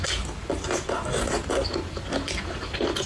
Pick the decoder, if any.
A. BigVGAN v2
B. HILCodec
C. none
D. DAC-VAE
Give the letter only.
C